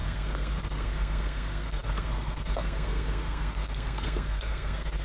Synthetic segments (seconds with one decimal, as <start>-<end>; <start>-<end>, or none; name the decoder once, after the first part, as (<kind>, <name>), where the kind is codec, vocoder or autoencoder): 0.0-5.0 (codec, SNAC)